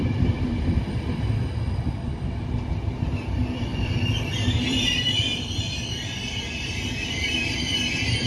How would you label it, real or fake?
fake